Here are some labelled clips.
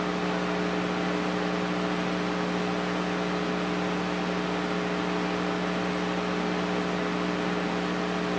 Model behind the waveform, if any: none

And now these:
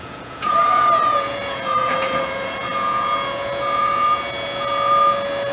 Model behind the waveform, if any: vocoder, Vocos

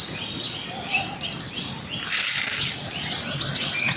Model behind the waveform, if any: none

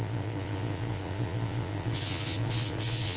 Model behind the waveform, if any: vocoder, Vocos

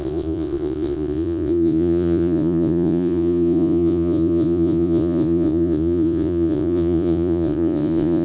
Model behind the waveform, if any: vocoder, Vocos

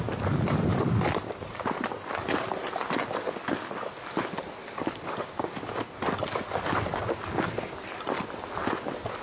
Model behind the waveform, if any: none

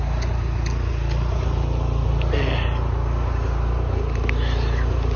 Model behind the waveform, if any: none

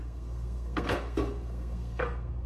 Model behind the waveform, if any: codec, SNAC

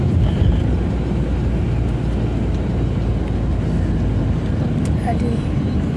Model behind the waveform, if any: none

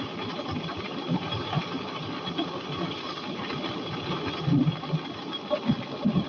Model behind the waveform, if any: vocoder, BigVGAN v2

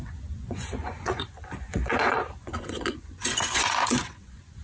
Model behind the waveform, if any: vocoder, Vocos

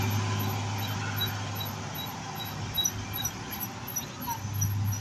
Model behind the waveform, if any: none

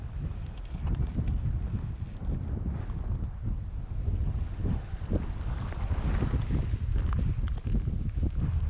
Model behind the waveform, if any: none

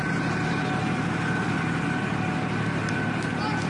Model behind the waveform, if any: none